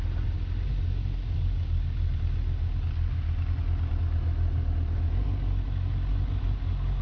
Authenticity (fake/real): real